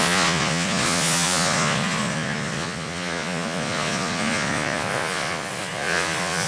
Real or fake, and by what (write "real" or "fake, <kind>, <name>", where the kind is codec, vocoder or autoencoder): fake, vocoder, Vocos